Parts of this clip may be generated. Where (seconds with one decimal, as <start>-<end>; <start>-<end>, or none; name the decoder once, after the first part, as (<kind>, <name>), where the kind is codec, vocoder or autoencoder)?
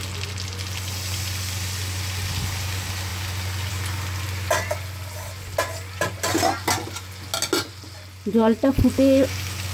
none